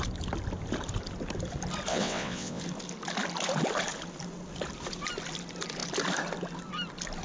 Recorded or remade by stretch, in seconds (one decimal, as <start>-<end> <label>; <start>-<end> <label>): 0.0-1.9 recorded; 1.9-2.6 remade; 2.6-7.2 recorded